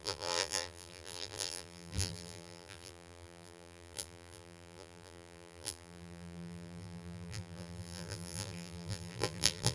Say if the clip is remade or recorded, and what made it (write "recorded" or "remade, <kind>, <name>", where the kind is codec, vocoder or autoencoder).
remade, vocoder, BigVGAN v2